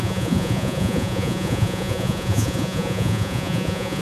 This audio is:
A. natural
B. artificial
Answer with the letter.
B